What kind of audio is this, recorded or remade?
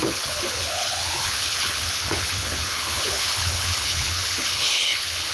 remade